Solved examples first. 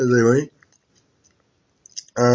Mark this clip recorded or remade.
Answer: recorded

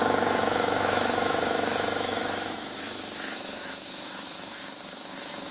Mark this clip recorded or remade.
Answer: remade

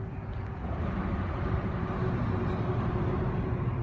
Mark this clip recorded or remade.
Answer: recorded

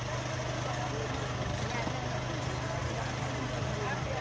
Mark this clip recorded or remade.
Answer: recorded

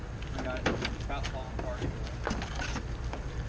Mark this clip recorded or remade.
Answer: recorded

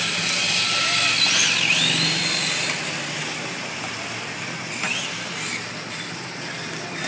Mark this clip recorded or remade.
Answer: recorded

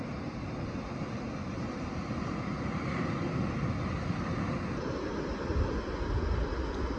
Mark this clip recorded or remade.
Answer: recorded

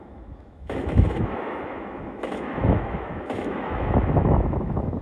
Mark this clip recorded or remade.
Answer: remade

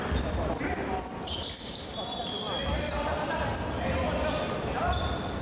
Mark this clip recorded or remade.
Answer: recorded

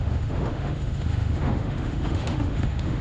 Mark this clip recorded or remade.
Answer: remade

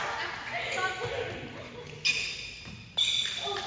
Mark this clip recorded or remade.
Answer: recorded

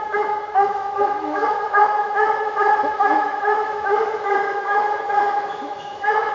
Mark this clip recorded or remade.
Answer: remade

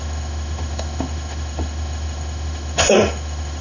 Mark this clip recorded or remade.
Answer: remade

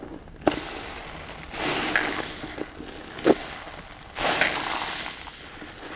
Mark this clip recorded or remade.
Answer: recorded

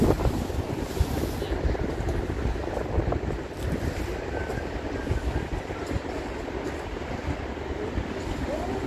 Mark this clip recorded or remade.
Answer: recorded